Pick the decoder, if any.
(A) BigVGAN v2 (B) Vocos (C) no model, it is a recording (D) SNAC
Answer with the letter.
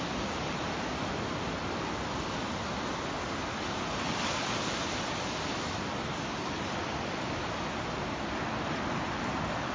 C